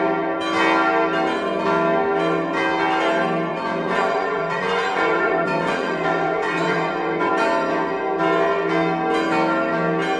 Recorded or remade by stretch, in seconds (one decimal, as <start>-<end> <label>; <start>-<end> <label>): 0.0-3.5 recorded; 3.5-7.3 remade; 7.3-10.2 recorded